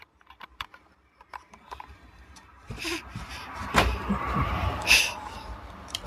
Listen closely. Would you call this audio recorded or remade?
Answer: remade